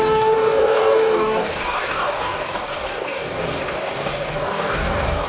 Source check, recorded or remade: remade